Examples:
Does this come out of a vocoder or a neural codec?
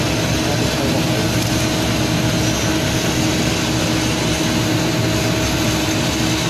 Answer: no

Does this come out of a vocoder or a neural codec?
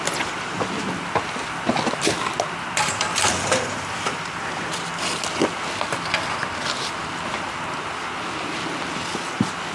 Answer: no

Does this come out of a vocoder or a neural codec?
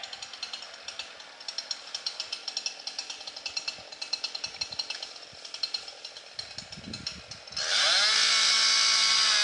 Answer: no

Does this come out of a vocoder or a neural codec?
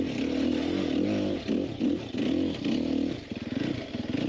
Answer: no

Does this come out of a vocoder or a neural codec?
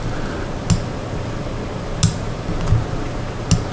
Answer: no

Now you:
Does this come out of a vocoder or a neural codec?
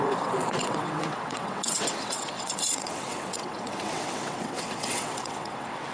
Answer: yes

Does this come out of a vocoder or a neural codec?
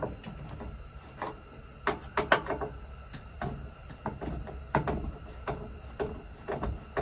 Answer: no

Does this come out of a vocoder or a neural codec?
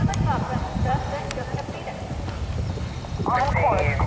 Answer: yes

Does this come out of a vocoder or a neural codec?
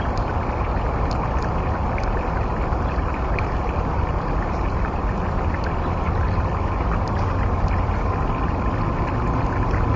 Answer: no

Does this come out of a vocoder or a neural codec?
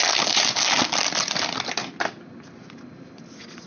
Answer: no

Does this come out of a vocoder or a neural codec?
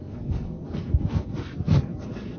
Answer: yes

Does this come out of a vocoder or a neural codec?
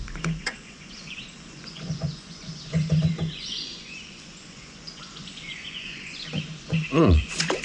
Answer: yes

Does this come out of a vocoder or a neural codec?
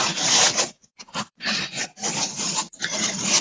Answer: yes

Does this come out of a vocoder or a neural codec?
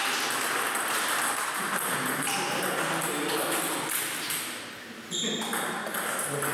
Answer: no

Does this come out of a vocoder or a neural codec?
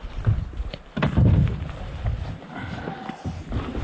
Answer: no